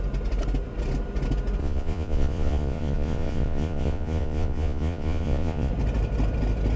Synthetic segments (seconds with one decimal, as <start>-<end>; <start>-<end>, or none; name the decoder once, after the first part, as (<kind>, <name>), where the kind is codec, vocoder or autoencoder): 1.6-5.7 (vocoder, Vocos)